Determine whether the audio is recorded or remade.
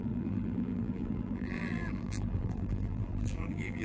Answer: remade